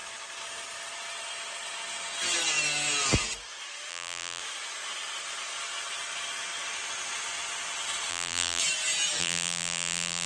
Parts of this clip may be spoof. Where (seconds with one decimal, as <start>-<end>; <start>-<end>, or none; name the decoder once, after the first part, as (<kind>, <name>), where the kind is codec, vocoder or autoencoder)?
3.9-4.4 (vocoder, BigVGAN v2); 8.1-8.6; 9.2-10.3